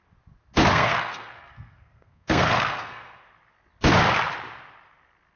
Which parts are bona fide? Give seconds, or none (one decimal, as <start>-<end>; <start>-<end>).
0.0-0.7; 3.3-5.4

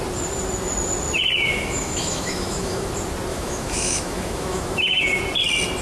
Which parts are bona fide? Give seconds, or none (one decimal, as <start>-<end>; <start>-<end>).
0.0-1.5; 2.9-3.3; 5.2-5.8

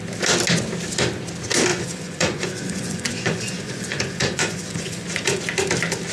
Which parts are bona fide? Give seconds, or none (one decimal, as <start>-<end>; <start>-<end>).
0.0-1.7; 5.4-6.1

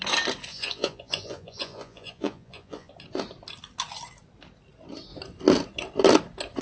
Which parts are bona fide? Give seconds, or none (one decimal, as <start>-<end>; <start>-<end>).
0.0-0.5; 2.9-6.6

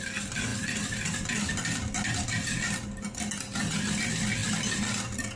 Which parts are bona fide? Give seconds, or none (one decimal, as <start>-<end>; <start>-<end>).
0.0-5.4

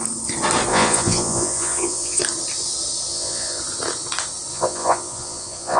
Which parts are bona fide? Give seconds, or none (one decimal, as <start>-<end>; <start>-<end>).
0.0-0.7; 2.2-3.1; 3.6-4.5

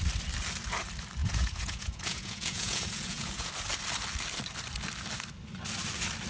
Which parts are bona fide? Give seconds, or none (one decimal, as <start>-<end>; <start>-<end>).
0.0-1.2; 3.5-6.3